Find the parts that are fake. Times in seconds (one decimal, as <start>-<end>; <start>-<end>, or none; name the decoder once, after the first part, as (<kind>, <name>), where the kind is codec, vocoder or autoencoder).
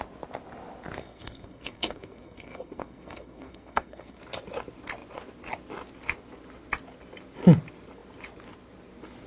1.0-4.2 (codec, SNAC)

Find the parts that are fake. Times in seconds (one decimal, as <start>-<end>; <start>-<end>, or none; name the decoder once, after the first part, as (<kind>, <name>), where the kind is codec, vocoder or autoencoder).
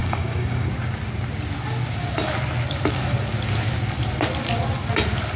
0.0-0.7 (codec, DAC)